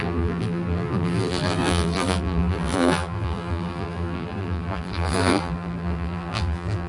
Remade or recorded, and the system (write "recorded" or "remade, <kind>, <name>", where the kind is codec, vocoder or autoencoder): remade, vocoder, BigVGAN v2